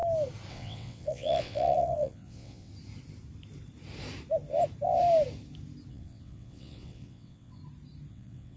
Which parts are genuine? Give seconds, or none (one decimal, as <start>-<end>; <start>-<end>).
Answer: 0.0-0.5; 2.7-5.9; 7.6-8.1